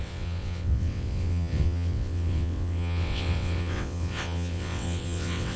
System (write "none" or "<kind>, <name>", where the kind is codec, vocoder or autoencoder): vocoder, WaveNeXt